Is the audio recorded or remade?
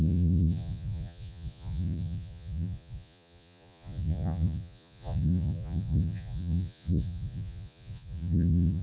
remade